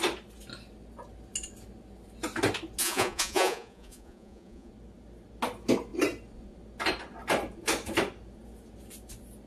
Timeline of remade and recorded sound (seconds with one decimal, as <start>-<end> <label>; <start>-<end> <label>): 0.0-2.8 recorded; 2.8-4.7 remade; 4.7-9.5 recorded